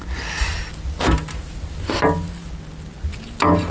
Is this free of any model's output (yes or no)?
yes